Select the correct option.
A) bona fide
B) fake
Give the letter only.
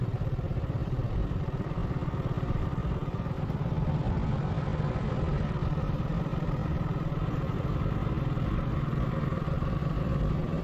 B